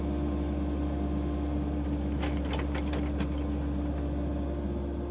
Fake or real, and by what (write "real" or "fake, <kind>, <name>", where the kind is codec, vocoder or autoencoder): real